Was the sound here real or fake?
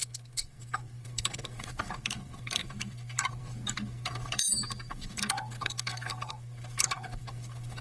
fake